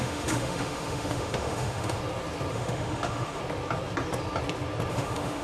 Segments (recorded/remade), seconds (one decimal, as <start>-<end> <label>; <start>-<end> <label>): 0.0-2.0 remade; 2.0-2.5 recorded; 2.5-3.4 remade; 3.4-4.9 recorded; 4.9-5.4 remade